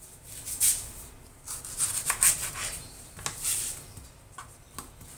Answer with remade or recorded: recorded